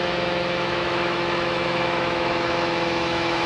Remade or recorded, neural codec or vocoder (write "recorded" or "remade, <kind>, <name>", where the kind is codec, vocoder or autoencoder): remade, autoencoder, DAC-VAE